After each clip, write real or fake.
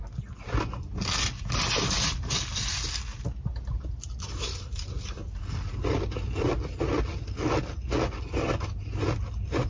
real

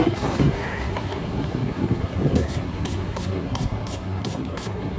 fake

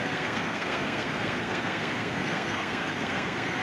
fake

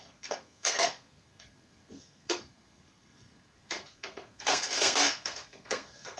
fake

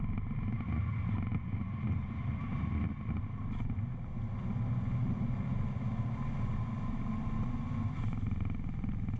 real